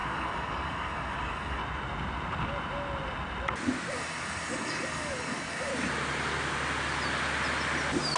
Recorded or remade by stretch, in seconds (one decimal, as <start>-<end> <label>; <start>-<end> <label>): 0.0-1.6 remade; 1.6-3.9 recorded; 3.9-5.7 remade; 5.7-8.2 recorded